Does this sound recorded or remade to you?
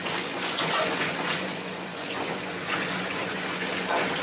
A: remade